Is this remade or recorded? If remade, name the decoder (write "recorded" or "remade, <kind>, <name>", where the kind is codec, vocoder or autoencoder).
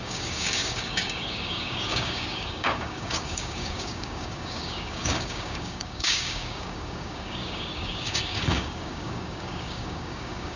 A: remade, codec, DAC